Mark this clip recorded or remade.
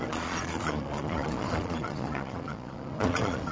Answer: remade